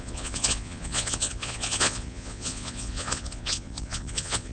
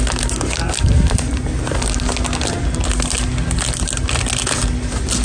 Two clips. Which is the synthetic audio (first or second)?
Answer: first